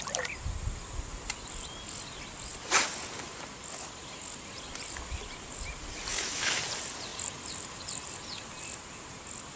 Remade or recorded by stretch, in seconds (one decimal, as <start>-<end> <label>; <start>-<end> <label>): 0.0-6.1 recorded; 6.1-6.6 remade; 6.6-9.6 recorded